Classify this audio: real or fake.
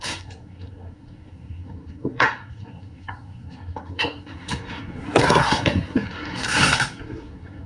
fake